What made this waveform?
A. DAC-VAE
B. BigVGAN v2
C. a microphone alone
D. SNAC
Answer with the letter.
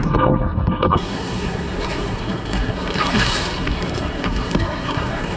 D